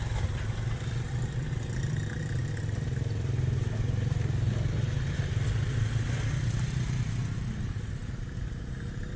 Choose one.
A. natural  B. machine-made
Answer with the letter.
A